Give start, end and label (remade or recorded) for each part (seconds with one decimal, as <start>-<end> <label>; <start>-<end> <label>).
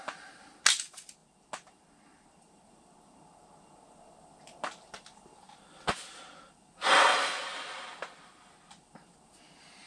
0.0-9.9 recorded